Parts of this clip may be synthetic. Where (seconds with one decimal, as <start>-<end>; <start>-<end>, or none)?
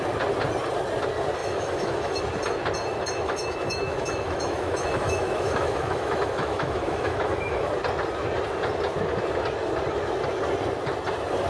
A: 1.4-2.2; 2.9-7.7